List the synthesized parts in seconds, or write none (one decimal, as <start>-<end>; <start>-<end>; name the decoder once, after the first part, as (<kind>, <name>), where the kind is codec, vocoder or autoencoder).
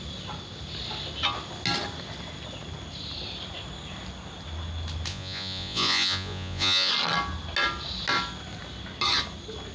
5.1-6.9 (vocoder, Vocos)